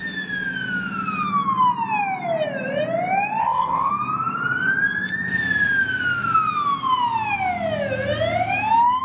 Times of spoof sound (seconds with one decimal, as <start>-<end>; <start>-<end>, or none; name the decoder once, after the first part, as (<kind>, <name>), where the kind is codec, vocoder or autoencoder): 3.4-3.9 (codec, ZipCodec)